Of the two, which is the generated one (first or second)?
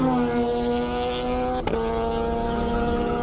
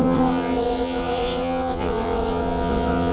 second